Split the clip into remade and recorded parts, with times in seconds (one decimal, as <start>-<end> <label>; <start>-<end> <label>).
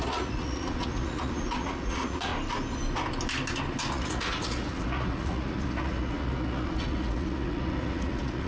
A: 0.0-2.3 remade; 2.3-3.9 recorded; 3.9-8.5 remade